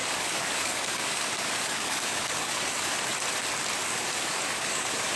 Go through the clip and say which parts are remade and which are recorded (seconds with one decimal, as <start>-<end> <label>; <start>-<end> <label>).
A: 0.0-3.0 remade; 3.0-3.8 recorded; 3.8-5.2 remade